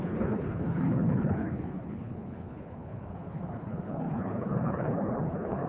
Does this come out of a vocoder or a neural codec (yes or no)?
yes